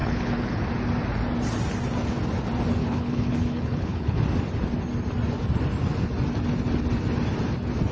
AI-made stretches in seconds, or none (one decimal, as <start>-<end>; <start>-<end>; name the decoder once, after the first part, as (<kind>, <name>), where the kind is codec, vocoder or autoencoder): 0.0-0.6 (codec, HILCodec); 2.8-4.2